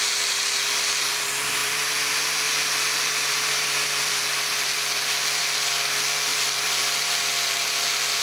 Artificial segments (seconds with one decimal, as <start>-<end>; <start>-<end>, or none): 0.0-8.2